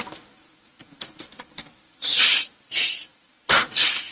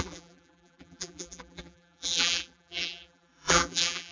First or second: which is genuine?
first